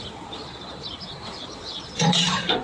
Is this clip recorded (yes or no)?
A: no